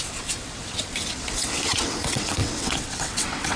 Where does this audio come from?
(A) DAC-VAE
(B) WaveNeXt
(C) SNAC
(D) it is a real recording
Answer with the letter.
B